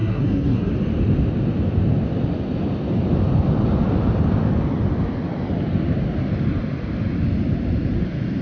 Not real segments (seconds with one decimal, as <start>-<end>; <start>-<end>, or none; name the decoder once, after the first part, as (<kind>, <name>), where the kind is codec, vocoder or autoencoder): 0.0-0.7 (codec, SNAC)